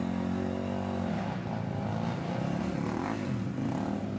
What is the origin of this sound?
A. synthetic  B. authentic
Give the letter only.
B